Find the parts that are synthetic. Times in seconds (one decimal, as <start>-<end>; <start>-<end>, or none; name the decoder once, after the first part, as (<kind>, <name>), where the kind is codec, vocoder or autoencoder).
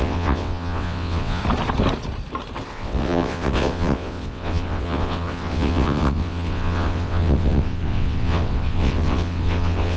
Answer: 0.0-1.4 (vocoder, WaveNeXt); 2.7-10.0